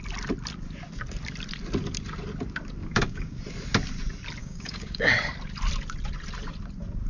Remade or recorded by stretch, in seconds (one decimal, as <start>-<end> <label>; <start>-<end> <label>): 0.0-2.8 recorded; 2.8-3.4 remade; 3.4-4.4 recorded; 4.4-5.1 remade; 5.1-7.1 recorded